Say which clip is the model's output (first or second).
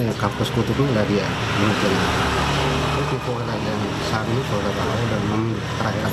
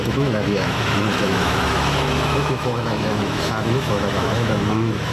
second